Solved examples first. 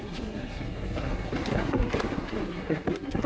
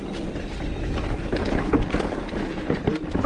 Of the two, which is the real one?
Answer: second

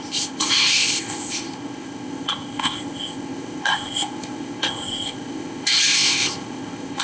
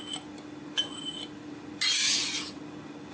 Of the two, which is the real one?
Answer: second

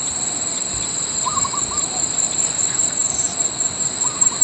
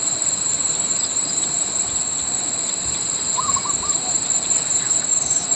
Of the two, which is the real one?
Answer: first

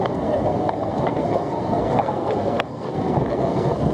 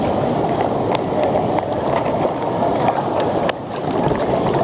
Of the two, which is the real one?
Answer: second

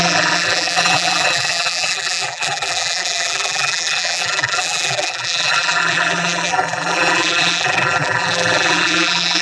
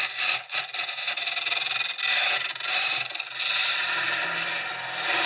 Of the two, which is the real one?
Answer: second